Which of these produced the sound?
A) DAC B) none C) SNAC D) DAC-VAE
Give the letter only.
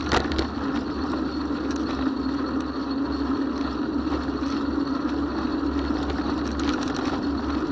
B